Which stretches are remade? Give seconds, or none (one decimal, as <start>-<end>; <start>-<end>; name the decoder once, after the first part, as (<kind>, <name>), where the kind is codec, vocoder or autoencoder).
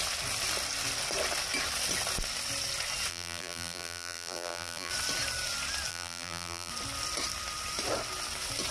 3.1-4.9 (vocoder, BigVGAN v2); 5.9-6.7